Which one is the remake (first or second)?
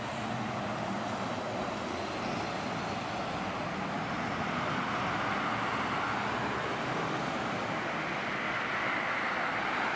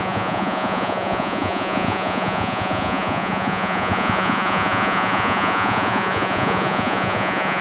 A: second